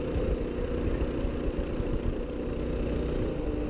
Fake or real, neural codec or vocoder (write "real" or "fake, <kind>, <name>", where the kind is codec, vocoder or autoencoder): real